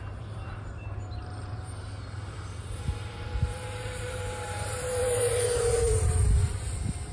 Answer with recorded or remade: remade